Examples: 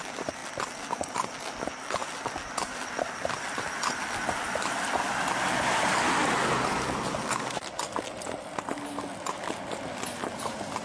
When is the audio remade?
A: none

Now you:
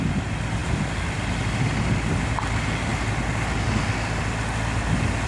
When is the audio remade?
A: none

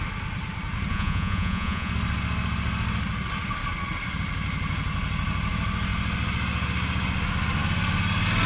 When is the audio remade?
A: 0.9-1.9 (vocoder, Vocos)